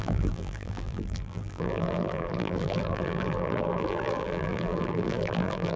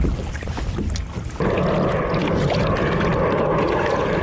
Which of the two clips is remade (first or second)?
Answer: first